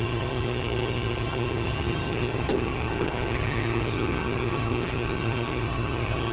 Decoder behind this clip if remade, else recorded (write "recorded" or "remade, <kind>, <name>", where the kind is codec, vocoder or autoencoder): remade, vocoder, HiFi-GAN